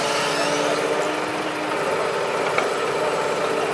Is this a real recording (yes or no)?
yes